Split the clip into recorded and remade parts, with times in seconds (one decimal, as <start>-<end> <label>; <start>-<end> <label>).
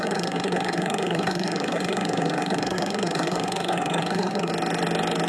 0.0-4.5 remade; 4.5-5.3 recorded